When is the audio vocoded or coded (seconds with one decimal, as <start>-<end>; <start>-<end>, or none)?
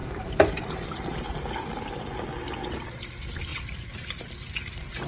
0.0-1.7; 3.5-5.1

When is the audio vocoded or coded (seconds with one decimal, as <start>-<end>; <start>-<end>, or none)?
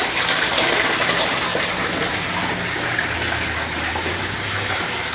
0.0-1.5; 4.4-5.1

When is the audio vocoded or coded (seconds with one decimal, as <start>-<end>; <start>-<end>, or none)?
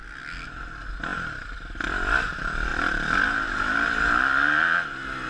2.7-4.0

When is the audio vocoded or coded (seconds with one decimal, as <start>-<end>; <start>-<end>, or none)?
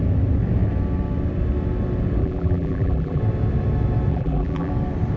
2.2-3.2; 4.1-4.7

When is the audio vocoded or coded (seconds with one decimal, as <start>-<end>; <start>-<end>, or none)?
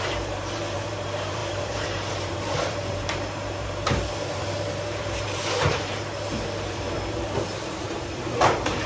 0.0-8.9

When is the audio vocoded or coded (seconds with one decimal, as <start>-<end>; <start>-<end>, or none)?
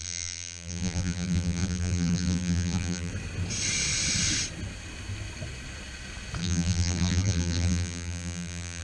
0.0-3.1; 6.4-8.8